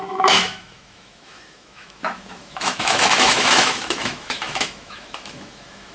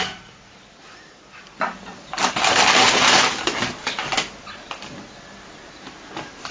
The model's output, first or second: first